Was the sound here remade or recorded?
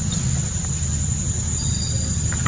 recorded